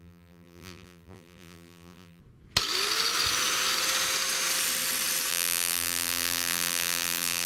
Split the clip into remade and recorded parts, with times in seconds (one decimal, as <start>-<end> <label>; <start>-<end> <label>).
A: 0.0-2.2 remade; 2.2-5.3 recorded; 5.3-7.5 remade